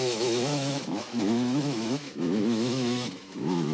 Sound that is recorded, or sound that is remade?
remade